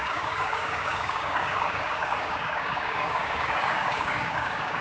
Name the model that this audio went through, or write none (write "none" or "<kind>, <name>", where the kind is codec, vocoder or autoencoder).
codec, DAC